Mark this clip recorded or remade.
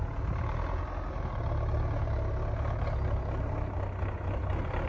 recorded